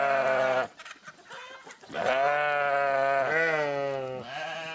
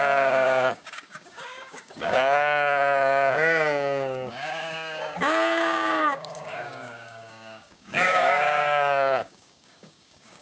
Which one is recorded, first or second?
first